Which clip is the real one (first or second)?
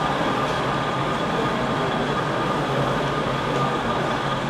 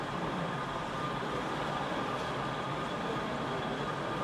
first